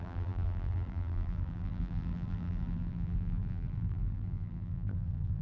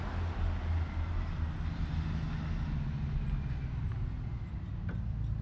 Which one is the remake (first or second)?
first